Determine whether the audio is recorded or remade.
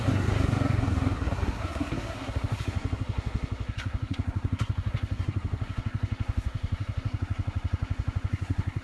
remade